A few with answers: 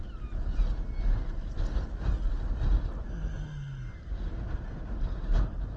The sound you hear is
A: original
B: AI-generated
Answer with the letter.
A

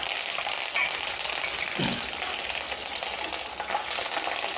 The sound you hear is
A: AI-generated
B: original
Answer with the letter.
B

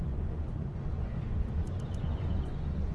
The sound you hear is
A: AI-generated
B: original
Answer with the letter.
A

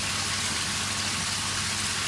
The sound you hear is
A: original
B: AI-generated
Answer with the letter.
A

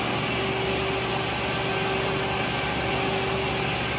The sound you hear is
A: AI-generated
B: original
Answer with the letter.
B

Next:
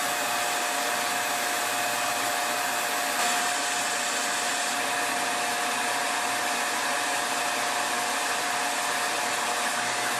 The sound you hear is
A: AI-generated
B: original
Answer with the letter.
B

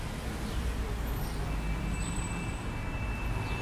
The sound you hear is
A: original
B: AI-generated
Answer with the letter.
A